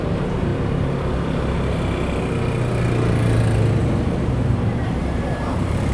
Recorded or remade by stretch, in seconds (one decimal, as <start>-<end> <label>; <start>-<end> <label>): 0.0-0.5 remade; 0.5-3.8 recorded; 3.8-5.9 remade